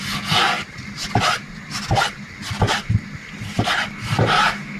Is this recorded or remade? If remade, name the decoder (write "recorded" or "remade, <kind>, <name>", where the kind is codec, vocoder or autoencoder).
recorded